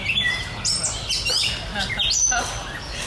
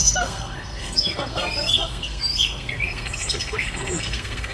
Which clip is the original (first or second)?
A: first